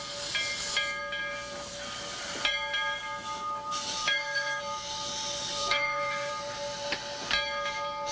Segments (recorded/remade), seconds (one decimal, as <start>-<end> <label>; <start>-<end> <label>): 0.0-4.0 recorded; 4.0-4.6 remade; 4.6-5.6 recorded; 5.6-6.3 remade; 6.3-8.1 recorded